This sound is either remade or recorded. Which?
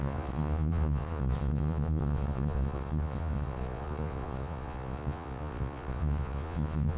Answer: remade